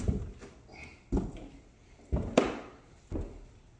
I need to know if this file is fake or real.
real